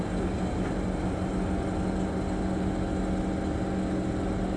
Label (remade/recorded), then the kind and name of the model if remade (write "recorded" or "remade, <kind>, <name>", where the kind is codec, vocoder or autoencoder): recorded